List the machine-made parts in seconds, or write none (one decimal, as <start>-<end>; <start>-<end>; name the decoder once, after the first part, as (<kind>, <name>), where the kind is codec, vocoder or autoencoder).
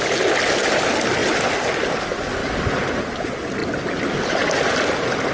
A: none